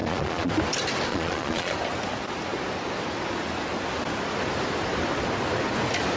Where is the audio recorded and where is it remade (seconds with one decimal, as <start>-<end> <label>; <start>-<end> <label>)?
0.0-0.5 remade; 0.5-1.1 recorded; 1.1-1.7 remade; 1.7-6.2 recorded